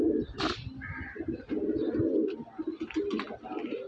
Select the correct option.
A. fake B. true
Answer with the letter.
B